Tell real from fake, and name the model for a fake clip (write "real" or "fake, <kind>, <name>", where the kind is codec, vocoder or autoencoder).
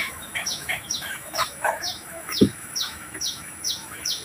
fake, autoencoder, DAC-VAE